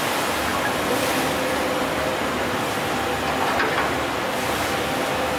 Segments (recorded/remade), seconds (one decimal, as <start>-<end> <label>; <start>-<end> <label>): 0.0-5.4 recorded